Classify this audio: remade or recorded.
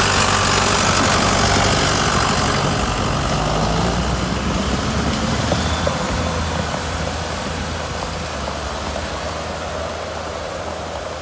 recorded